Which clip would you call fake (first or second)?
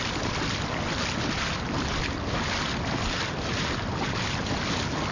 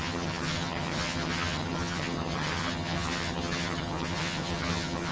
second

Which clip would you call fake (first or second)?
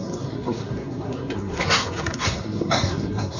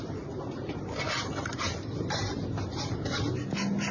first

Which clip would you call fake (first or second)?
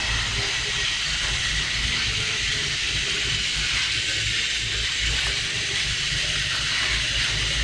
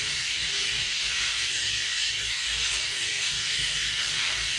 second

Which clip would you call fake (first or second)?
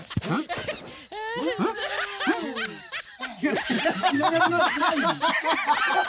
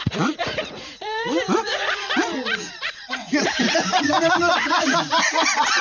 second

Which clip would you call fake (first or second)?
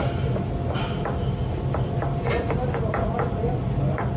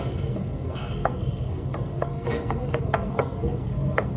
second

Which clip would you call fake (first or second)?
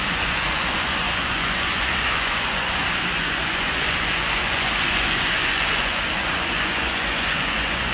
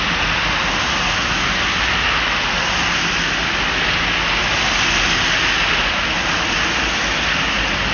first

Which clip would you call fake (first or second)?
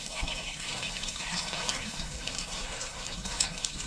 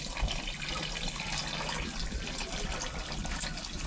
first